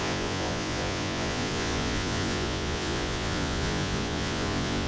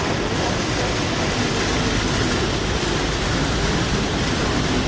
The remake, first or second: first